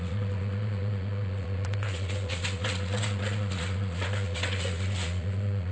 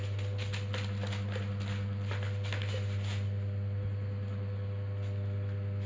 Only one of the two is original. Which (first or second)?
second